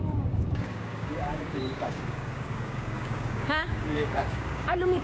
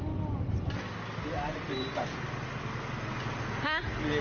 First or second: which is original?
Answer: second